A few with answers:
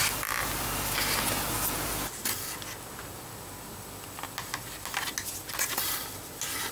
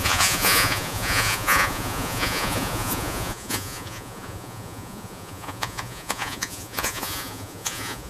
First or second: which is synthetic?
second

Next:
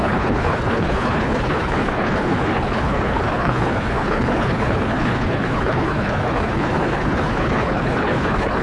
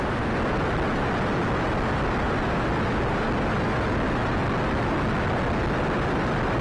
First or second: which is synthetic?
first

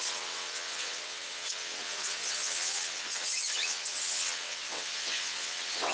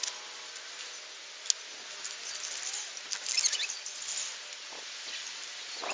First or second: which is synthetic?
first